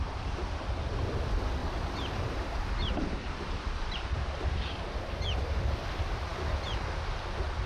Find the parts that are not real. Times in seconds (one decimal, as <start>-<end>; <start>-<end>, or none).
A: 0.0-0.9; 1.6-4.9